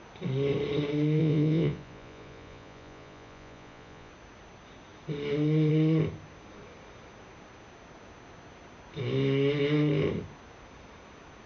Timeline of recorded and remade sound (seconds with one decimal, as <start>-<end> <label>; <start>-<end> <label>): 0.0-1.2 recorded; 1.2-4.1 remade; 4.1-11.5 recorded